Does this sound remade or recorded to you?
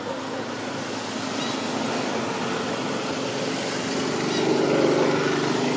recorded